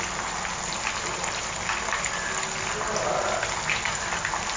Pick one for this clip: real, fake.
real